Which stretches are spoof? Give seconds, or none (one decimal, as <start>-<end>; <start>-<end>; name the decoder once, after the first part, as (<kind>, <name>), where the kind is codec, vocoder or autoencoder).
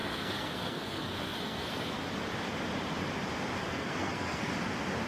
0.0-2.0 (codec, SNAC); 3.7-4.5